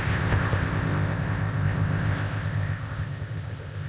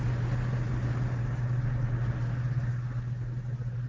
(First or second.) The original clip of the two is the second